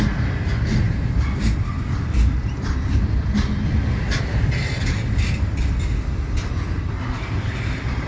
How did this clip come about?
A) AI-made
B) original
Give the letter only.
B